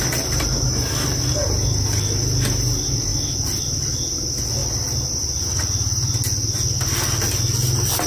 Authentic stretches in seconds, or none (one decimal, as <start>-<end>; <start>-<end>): 0.0-8.1